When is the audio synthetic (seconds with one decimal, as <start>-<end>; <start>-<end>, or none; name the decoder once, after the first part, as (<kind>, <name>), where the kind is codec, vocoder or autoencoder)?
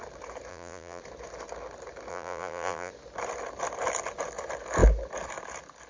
0.5-1.0 (vocoder, BigVGAN v2); 2.1-2.9